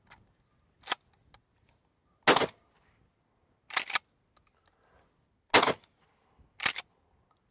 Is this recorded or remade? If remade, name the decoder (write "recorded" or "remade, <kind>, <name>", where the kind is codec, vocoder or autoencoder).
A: recorded